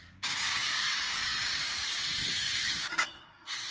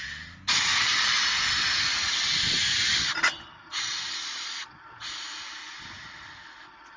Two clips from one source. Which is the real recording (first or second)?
second